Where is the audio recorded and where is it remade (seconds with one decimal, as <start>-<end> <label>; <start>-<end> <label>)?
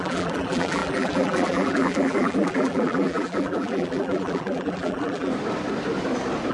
0.0-5.3 remade; 5.3-6.5 recorded